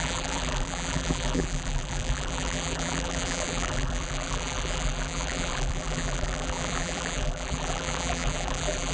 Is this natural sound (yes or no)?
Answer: no